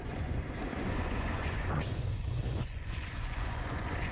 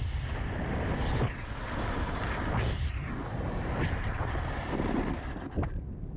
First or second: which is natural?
second